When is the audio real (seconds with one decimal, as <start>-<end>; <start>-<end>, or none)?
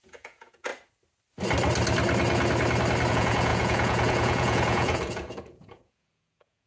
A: 0.7-3.1